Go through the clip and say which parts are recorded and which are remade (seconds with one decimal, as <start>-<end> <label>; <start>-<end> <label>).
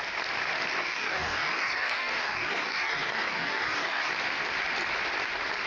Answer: 0.0-0.7 recorded; 0.7-4.1 remade; 4.1-5.7 recorded